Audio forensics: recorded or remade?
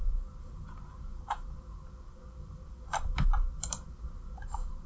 remade